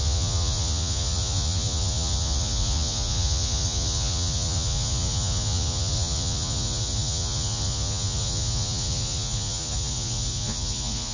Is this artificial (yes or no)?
yes